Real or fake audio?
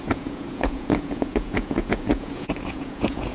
fake